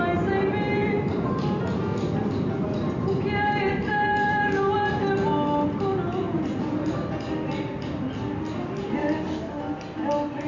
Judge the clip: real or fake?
real